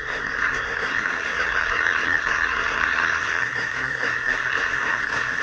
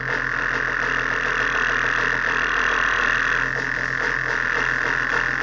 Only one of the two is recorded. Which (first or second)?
second